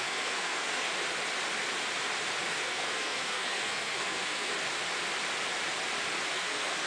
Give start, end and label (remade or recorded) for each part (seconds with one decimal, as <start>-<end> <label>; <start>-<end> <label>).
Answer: 0.0-0.9 remade; 0.9-2.5 recorded; 2.5-4.5 remade; 4.5-6.3 recorded; 6.3-6.9 remade